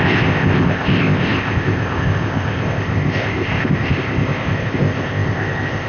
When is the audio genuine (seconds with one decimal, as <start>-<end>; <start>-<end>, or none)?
none